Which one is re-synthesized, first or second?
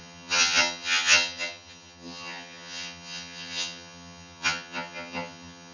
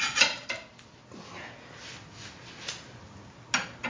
first